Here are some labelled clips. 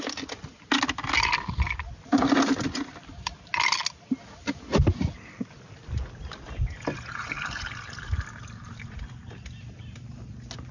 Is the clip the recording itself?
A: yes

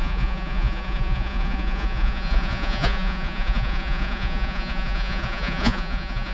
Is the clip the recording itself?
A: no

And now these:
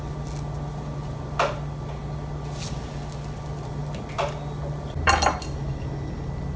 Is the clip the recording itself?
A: yes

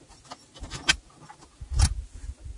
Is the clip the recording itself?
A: yes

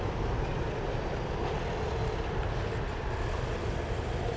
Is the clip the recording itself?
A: yes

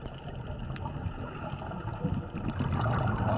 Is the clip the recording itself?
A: yes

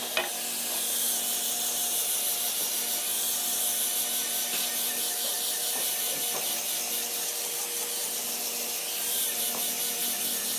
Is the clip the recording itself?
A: yes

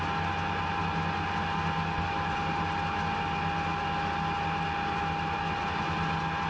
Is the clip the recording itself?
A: yes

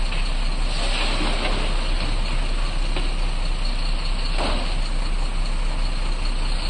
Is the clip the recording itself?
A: yes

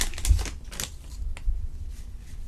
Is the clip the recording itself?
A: yes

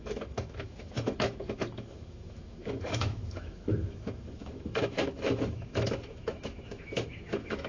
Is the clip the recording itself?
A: no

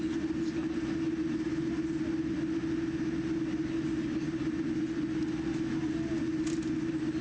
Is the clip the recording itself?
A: yes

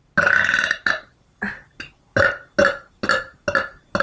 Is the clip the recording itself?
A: yes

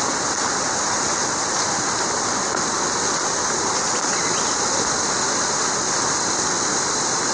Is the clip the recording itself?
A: yes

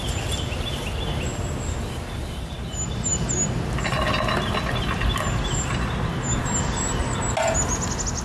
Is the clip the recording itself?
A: yes